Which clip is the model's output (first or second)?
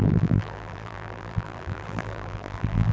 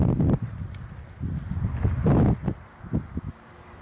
first